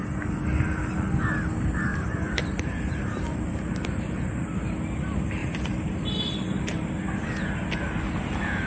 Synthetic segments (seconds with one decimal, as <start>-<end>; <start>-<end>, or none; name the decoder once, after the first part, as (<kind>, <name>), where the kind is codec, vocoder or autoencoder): 1.9-4.5 (vocoder, BigVGAN v2); 5.4-6.0